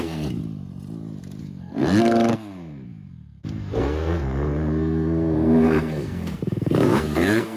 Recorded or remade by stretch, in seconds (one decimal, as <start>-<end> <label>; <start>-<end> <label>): 0.0-0.4 remade; 0.4-1.4 recorded; 1.4-7.6 remade